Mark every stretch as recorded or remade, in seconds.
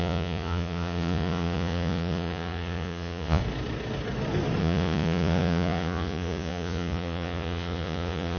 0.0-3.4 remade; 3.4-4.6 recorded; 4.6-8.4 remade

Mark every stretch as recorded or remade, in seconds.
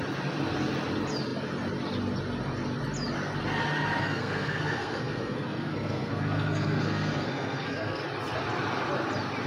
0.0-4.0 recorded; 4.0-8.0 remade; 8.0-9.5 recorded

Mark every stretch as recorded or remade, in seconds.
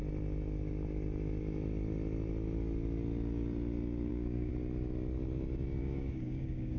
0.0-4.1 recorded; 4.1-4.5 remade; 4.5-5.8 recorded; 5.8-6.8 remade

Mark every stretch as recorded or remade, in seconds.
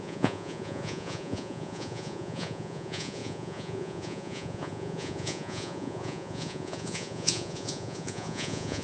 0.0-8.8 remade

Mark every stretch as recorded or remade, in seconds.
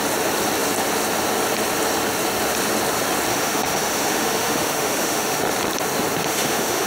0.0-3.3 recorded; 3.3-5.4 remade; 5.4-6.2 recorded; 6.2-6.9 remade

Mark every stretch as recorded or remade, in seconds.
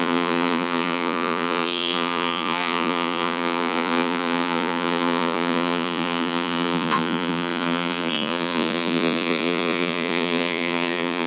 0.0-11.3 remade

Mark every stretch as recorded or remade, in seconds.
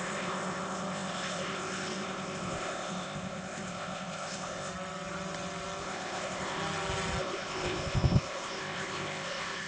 0.0-4.7 remade; 4.7-5.8 recorded; 5.8-6.6 remade; 6.6-7.2 recorded; 7.2-9.7 remade